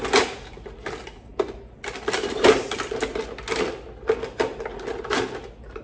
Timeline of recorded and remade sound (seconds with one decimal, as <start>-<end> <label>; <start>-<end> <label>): 0.0-5.8 recorded